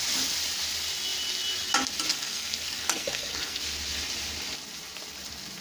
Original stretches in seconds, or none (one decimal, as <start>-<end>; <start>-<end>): 0.0-2.1; 3.6-5.6

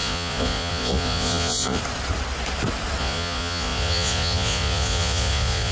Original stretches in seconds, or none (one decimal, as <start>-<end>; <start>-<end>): 1.8-3.0